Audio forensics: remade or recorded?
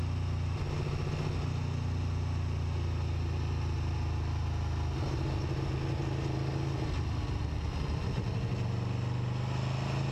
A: recorded